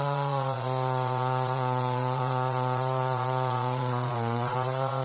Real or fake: fake